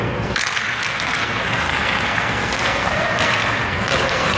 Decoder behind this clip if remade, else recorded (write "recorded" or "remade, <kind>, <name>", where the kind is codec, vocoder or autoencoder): remade, codec, SNAC